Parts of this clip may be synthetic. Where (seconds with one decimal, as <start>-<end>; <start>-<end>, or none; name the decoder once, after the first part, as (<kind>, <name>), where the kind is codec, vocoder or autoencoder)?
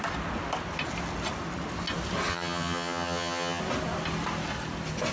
2.3-3.6 (vocoder, HiFi-GAN)